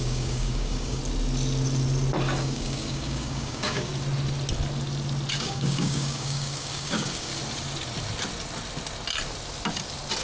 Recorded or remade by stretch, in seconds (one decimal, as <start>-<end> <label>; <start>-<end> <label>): 0.0-1.0 remade; 1.0-2.4 recorded; 2.4-3.9 remade; 3.9-5.3 recorded; 5.3-7.3 remade; 7.3-10.2 recorded